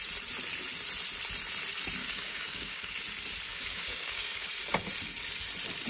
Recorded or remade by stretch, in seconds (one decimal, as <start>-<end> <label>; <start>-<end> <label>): 0.0-2.0 recorded; 2.0-2.9 remade; 2.9-3.5 recorded; 3.5-4.5 remade; 4.5-5.9 recorded